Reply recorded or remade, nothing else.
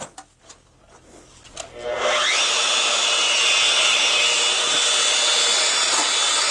recorded